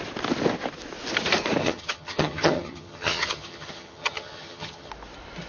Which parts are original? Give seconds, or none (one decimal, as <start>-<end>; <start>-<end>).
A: 0.0-1.6; 4.9-5.5